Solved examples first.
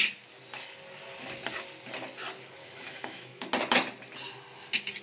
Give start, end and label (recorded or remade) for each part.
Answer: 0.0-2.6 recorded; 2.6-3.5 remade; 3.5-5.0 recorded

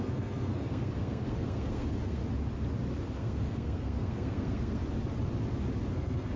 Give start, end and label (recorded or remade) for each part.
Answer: 0.0-2.2 remade; 2.2-3.2 recorded; 3.2-4.8 remade; 4.8-5.9 recorded; 5.9-6.4 remade

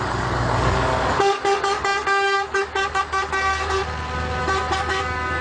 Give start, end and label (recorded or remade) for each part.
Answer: 0.0-3.8 remade; 3.8-4.4 recorded; 4.4-5.4 remade